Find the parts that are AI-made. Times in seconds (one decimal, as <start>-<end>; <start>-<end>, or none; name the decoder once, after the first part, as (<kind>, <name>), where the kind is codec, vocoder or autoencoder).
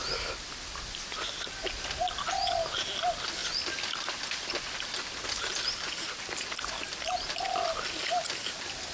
none